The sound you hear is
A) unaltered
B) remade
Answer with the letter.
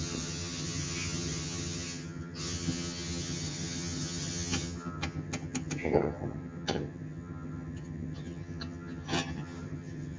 B